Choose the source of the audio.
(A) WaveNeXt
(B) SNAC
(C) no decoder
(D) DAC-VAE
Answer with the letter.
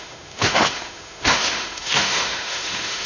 D